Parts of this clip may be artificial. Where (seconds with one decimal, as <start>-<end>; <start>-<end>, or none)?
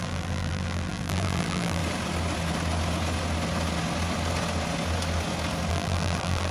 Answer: 0.0-1.8; 5.7-6.5